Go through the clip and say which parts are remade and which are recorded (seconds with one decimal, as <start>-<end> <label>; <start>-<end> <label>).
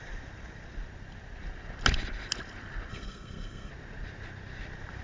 0.0-2.9 recorded; 2.9-3.7 remade; 3.7-5.0 recorded